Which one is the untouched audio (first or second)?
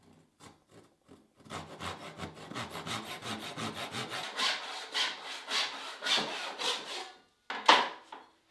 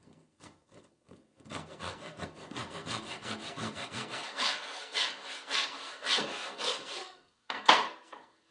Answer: first